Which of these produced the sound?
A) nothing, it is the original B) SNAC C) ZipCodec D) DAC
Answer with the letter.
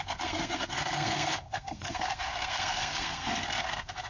B